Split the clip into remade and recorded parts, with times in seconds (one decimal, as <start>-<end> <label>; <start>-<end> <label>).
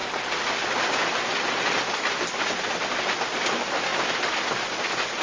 0.0-5.2 recorded